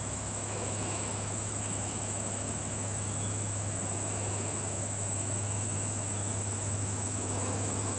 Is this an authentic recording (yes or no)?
no